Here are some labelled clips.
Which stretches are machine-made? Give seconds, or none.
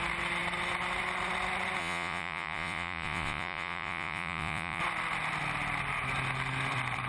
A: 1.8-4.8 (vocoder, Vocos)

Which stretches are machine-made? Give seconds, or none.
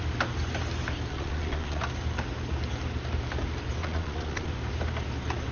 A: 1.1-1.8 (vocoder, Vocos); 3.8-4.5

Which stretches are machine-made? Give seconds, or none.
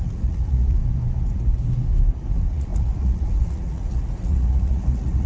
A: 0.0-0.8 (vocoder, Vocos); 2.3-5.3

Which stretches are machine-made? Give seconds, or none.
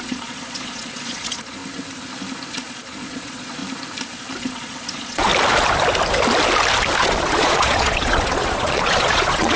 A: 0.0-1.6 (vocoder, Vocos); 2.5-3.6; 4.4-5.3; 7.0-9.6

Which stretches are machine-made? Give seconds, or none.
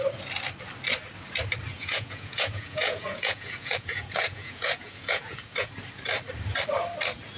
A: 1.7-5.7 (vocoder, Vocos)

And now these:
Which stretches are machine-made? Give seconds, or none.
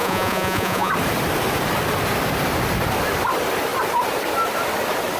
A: 0.0-0.9 (vocoder, Vocos)